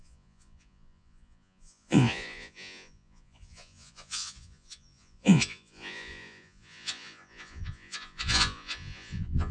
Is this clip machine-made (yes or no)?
yes